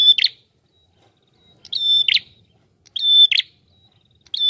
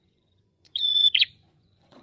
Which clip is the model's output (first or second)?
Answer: second